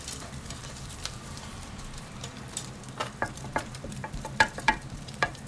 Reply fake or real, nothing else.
fake